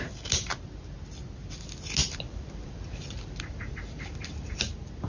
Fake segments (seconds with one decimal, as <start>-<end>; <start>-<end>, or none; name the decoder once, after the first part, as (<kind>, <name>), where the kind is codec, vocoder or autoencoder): 2.0-4.6 (vocoder, BigVGAN v2)